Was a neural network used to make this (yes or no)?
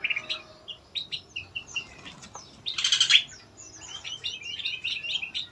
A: no